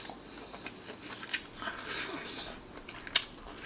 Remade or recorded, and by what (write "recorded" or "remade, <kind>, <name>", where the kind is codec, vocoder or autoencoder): recorded